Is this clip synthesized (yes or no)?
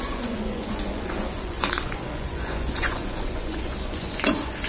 yes